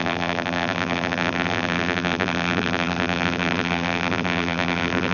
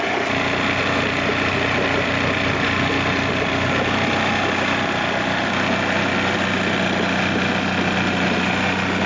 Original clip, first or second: second